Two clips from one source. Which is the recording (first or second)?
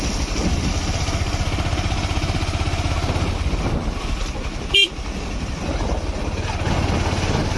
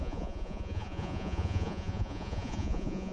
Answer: first